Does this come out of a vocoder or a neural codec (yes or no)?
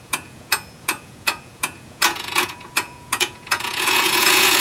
yes